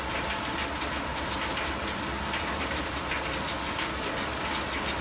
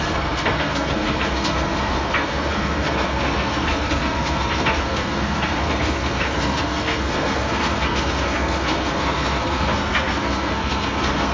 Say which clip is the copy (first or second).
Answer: second